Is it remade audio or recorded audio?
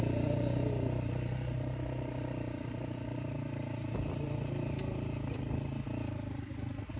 recorded